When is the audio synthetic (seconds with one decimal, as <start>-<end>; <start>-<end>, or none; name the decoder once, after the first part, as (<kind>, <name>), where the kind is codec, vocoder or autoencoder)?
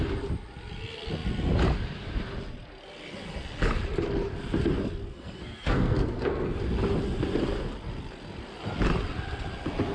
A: 5.0-6.6 (codec, SNAC)